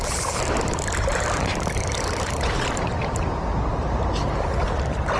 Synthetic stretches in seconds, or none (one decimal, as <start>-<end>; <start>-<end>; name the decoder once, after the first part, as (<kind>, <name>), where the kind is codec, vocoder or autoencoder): none